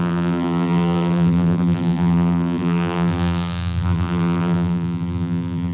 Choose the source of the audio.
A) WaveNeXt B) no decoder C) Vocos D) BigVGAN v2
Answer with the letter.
D